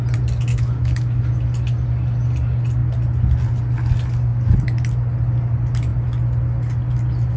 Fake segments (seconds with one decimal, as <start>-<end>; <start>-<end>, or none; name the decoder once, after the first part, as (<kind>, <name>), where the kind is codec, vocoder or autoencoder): 0.5-1.2 (autoencoder, DAC-VAE)